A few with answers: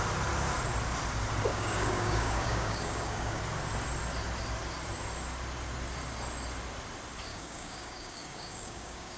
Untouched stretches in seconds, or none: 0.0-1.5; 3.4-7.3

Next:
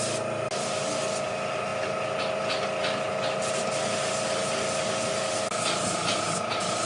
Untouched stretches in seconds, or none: 0.0-6.8

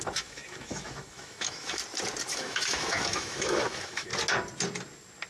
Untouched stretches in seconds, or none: 1.8-2.3; 4.1-5.3

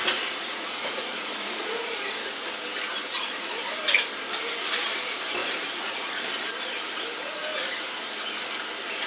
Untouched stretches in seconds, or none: 2.3-3.0; 3.5-5.4; 6.2-9.1

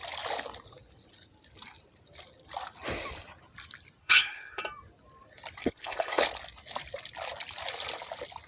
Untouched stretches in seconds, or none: 0.0-4.0; 4.6-5.6; 6.2-8.5

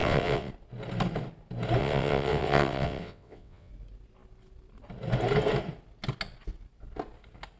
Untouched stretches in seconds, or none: 0.5-1.8; 3.7-7.6

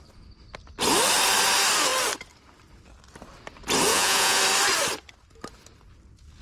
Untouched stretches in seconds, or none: 0.0-3.9; 4.4-6.4